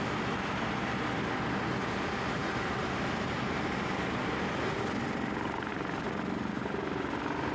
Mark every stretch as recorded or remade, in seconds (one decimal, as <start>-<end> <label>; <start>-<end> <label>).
0.0-7.5 recorded